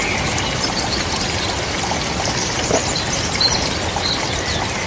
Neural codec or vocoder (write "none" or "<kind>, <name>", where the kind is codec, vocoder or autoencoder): none